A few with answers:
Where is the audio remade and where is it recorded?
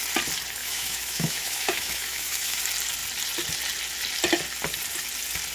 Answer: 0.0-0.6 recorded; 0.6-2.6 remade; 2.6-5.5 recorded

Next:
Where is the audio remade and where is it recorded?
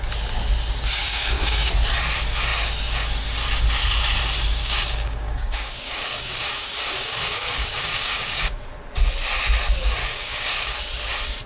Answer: 0.0-1.0 recorded; 1.0-1.7 remade; 1.7-4.5 recorded; 4.5-8.6 remade; 8.6-10.0 recorded; 10.0-10.8 remade; 10.8-11.5 recorded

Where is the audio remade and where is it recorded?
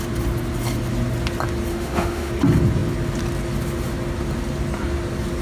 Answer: 0.0-1.7 recorded; 1.7-2.3 remade; 2.3-5.4 recorded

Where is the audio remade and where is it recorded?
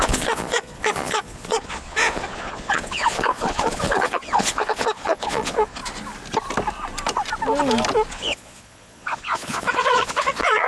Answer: 0.0-5.8 remade; 5.8-8.1 recorded; 8.1-10.7 remade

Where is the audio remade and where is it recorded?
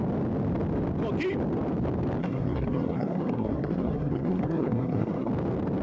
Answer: 0.0-2.2 recorded; 2.2-5.3 remade; 5.3-5.8 recorded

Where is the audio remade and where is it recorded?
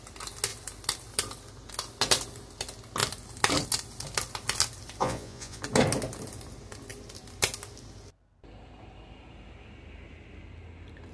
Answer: 0.0-5.0 recorded; 5.0-5.6 remade; 5.6-11.1 recorded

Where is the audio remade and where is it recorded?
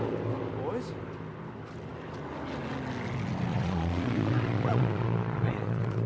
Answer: 0.0-3.5 recorded; 3.5-6.1 remade